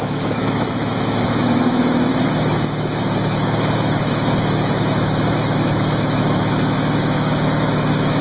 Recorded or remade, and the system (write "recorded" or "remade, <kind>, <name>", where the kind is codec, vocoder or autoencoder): remade, autoencoder, DAC-VAE